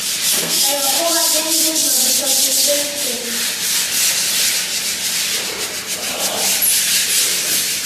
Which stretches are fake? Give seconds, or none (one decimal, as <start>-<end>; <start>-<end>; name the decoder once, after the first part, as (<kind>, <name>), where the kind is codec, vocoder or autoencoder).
0.4-1.0 (codec, SNAC)